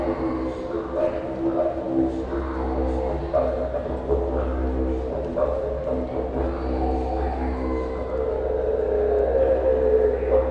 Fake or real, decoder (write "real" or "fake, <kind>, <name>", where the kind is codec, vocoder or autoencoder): real